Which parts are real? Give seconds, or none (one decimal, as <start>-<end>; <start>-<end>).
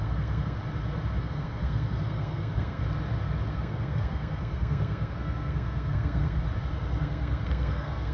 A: 0.6-1.2; 2.8-3.5; 6.4-7.0